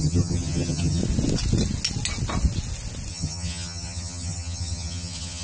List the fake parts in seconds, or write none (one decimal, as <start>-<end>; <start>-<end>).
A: 0.0-1.0; 3.1-5.4